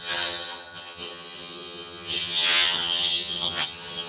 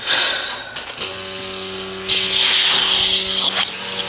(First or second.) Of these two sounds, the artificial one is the first